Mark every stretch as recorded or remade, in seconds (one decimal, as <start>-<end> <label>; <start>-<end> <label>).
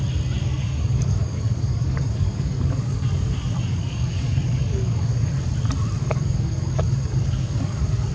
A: 0.0-0.4 recorded; 0.4-5.3 remade; 5.3-6.0 recorded; 6.0-8.1 remade